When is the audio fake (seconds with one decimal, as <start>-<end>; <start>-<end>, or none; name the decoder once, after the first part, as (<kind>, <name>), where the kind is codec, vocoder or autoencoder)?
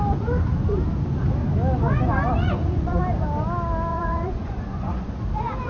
2.4-3.0 (vocoder, Vocos); 3.9-5.2